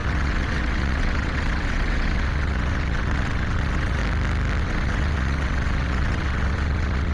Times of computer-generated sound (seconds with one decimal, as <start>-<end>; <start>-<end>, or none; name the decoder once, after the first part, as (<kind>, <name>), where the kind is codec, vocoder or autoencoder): 0.0-4.0 (vocoder, WaveNeXt); 4.6-7.1